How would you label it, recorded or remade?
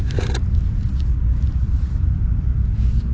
recorded